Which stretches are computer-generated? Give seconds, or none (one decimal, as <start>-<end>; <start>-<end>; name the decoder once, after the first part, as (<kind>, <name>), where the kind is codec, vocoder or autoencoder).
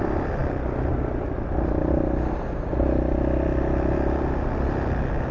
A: none